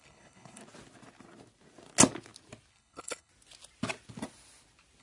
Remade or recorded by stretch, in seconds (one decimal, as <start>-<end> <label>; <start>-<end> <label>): 0.0-0.6 remade; 0.6-2.7 recorded; 2.7-3.3 remade; 3.3-5.0 recorded